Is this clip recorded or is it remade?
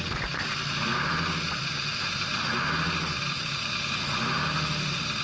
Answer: remade